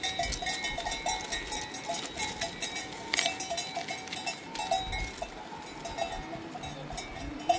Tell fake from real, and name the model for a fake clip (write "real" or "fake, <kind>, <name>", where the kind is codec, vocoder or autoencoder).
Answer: real